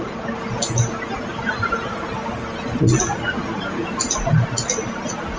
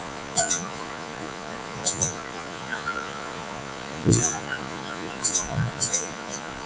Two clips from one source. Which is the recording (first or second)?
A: first